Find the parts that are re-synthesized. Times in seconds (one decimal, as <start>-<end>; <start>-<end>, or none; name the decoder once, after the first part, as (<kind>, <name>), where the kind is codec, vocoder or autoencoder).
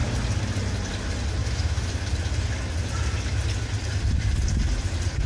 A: 1.4-1.9 (autoencoder, DAC-VAE)